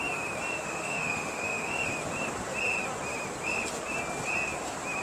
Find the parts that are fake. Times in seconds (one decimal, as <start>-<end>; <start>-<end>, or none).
0.5-1.9